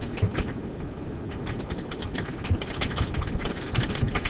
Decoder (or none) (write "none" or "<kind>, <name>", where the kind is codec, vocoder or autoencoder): none